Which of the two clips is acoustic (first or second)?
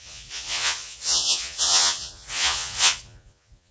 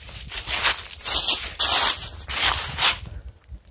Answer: second